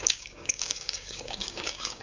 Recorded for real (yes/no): no